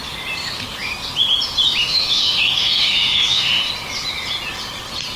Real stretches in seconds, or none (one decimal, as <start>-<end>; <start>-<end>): 0.0-1.8; 3.7-5.2